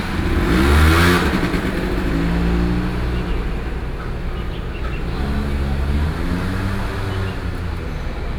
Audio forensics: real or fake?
real